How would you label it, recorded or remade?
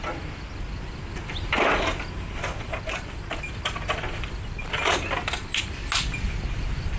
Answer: recorded